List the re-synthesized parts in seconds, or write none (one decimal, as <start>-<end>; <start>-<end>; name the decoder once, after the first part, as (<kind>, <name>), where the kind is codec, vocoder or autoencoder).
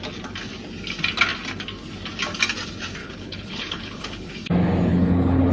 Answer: 3.0-4.3 (codec, HILCodec); 4.9-5.5